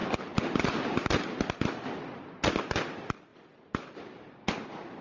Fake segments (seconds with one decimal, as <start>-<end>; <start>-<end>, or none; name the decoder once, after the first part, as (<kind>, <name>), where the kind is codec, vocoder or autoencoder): none